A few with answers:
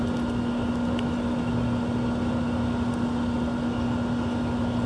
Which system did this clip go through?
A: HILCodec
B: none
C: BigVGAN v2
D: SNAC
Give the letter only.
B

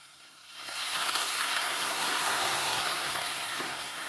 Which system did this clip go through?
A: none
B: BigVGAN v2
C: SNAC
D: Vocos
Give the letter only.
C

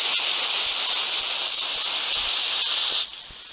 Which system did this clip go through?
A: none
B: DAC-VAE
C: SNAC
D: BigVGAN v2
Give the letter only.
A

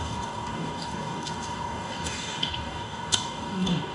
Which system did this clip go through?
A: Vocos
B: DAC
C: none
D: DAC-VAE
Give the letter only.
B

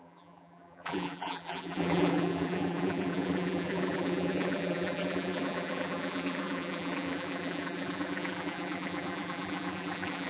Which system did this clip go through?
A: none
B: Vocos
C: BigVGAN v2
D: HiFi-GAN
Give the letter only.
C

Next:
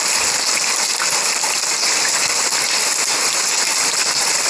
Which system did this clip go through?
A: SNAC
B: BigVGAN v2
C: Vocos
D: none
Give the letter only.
D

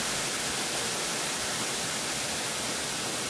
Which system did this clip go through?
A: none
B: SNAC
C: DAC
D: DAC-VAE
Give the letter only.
A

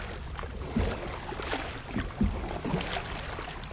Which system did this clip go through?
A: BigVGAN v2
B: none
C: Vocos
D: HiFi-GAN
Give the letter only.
B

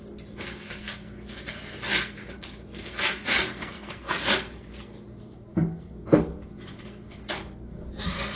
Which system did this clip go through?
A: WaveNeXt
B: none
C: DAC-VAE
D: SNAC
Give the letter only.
D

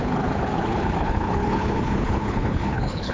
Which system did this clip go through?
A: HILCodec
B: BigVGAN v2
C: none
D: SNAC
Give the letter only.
A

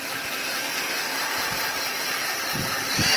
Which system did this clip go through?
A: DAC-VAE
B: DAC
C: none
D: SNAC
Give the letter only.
C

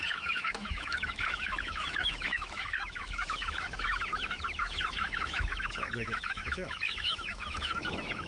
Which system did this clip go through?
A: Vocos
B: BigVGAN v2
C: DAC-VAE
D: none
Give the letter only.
C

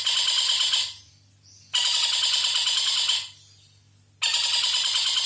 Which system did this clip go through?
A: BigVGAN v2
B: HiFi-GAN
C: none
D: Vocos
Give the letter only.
C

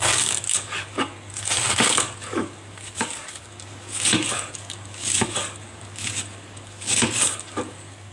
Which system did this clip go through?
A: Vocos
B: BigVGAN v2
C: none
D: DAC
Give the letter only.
D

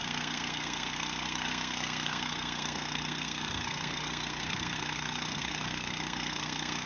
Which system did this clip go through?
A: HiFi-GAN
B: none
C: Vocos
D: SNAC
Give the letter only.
D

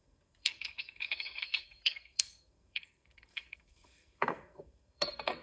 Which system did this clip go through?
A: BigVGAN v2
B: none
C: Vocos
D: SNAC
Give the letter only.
D